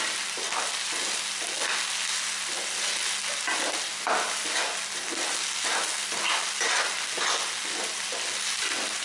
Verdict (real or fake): real